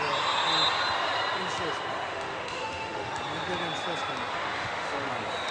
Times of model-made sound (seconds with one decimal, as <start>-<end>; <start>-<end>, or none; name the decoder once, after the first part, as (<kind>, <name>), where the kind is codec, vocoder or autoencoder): 2.1-3.1 (autoencoder, DAC-VAE); 4.3-5.1